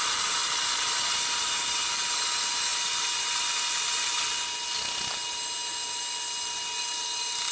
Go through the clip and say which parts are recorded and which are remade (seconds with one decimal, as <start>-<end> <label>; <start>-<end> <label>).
0.0-7.5 recorded